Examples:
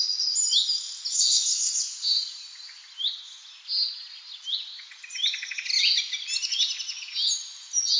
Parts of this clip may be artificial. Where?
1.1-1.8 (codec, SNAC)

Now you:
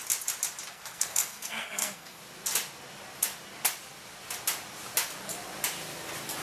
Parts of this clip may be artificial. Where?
0.7-2.2 (codec, SNAC)

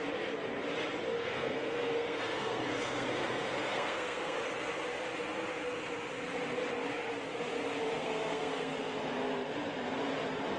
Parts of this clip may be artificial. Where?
1.2-4.4 (codec, SNAC); 8.0-8.7

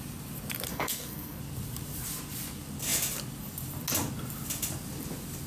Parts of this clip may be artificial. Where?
0.7-1.4 (codec, SNAC)

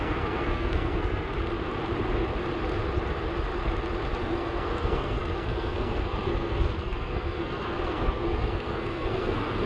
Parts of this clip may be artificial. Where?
0.0-1.3 (codec, SNAC); 4.2-9.7

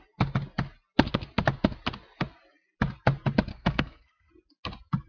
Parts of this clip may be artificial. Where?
3.5-4.3 (codec, SNAC)

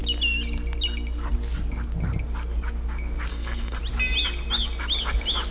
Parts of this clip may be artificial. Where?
3.3-3.8 (codec, SNAC)